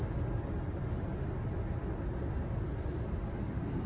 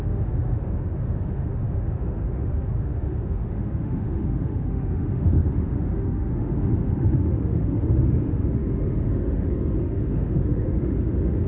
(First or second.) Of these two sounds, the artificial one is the second